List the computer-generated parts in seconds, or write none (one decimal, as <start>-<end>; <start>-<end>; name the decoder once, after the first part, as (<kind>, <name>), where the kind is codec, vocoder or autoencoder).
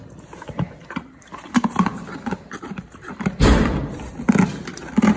none